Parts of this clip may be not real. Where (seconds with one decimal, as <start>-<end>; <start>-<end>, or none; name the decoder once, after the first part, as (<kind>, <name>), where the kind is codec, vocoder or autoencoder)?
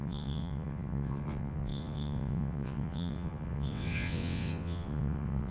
0.0-5.5 (vocoder, WaveNeXt)